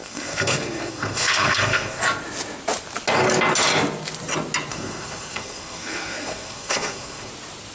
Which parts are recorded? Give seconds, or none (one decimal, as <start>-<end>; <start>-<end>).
2.0-4.7; 7.3-7.7

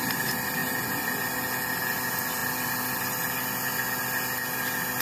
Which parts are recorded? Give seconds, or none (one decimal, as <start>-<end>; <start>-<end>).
0.0-5.0

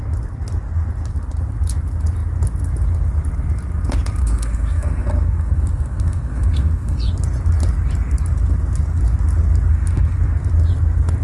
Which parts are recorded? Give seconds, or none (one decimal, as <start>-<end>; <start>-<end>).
0.0-4.2; 7.1-9.7; 10.2-11.2

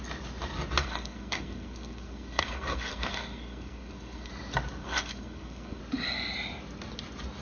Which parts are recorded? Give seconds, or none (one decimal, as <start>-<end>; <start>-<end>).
0.0-0.8; 4.3-4.8; 5.8-7.4